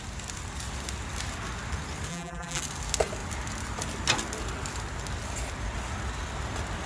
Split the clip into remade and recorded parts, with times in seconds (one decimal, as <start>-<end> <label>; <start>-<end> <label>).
0.0-2.1 recorded; 2.1-2.6 remade; 2.6-6.9 recorded